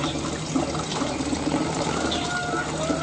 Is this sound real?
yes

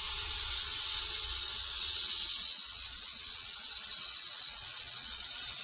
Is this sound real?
no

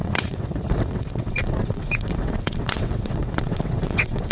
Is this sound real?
no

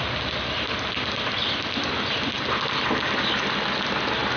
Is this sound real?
yes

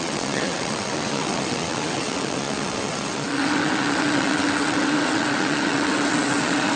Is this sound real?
no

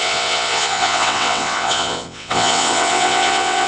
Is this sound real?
no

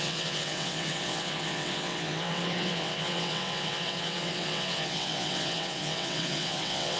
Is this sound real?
no